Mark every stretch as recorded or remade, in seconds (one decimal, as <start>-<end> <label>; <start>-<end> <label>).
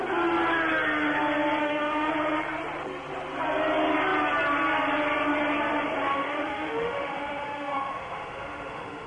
0.0-1.6 recorded; 1.6-2.1 remade; 2.1-6.1 recorded; 6.1-9.1 remade